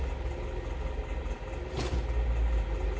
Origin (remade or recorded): recorded